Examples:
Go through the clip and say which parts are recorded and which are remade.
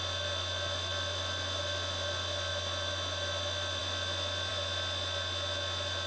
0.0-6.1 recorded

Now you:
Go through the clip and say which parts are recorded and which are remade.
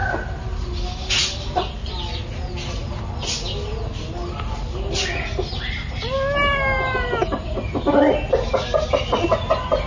0.0-9.9 recorded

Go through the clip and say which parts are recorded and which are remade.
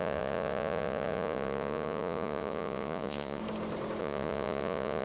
0.0-3.4 remade; 3.4-4.0 recorded; 4.0-5.0 remade